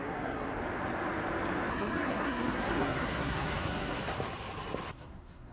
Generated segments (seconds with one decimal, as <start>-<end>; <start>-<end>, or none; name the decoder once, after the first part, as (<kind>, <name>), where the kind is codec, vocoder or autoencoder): 0.0-0.6 (codec, SNAC); 1.7-4.0; 4.9-5.5